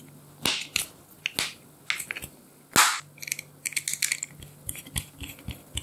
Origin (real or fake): real